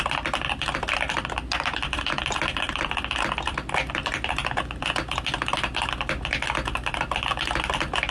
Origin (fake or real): real